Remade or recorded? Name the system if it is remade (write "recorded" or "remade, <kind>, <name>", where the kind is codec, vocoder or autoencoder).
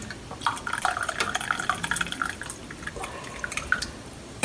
remade, vocoder, BigVGAN v2